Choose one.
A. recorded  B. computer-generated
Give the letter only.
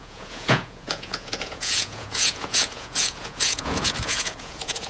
B